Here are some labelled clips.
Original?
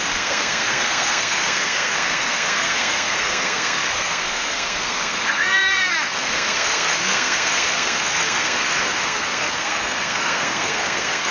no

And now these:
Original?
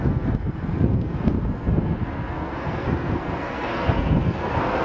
no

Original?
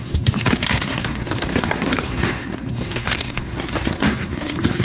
no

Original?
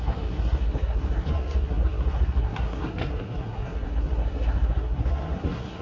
no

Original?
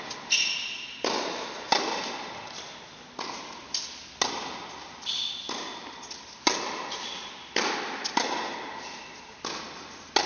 yes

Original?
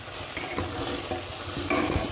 yes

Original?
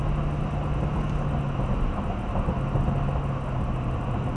yes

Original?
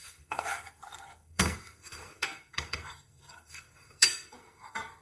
no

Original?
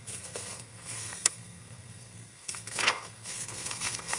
no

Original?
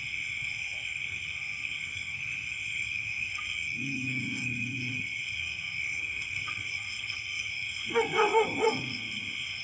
no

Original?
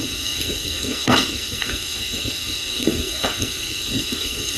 no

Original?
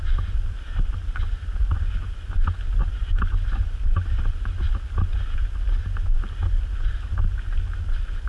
yes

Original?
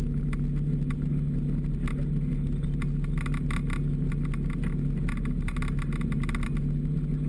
yes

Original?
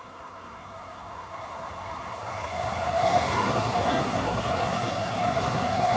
no